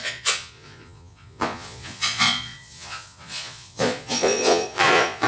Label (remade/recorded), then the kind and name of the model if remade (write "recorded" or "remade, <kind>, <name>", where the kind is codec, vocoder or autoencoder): remade, vocoder, Vocos